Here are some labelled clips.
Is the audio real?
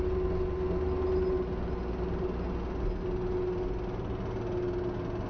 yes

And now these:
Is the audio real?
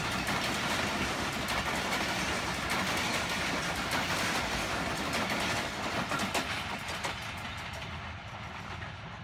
yes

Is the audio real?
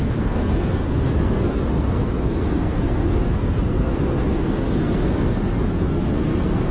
no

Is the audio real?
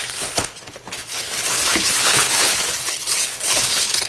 no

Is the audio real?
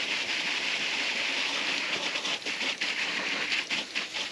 no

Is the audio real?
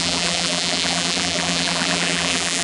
no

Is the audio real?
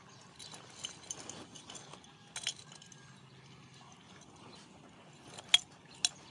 yes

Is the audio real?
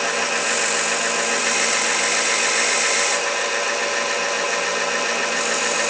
yes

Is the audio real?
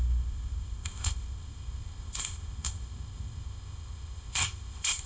no